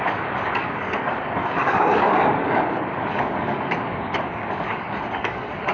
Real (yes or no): no